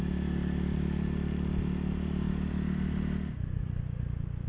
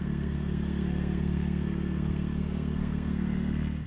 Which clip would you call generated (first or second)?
second